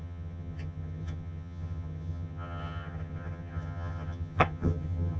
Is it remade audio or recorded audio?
remade